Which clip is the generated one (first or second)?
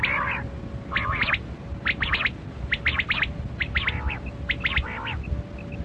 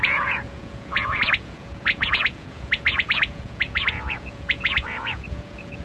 second